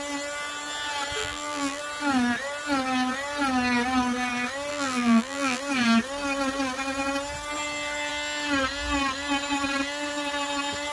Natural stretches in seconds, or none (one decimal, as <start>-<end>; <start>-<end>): 0.0-1.2; 1.8-4.7; 5.6-10.9